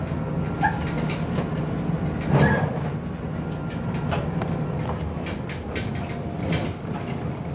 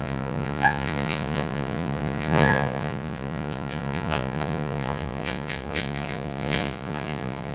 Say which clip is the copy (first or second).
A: second